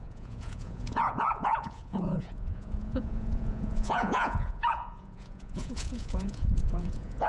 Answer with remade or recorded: remade